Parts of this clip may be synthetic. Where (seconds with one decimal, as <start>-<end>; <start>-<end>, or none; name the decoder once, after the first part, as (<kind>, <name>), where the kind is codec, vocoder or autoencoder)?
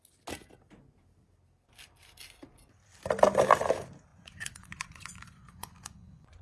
4.1-6.4 (vocoder, Vocos)